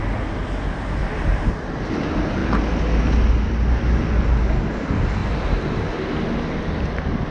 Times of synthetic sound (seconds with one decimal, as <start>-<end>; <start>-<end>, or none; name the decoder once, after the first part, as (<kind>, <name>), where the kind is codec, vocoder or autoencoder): 1.0-1.8 (vocoder, BigVGAN v2); 5.2-5.9